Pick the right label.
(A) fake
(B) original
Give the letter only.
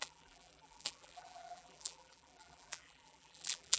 A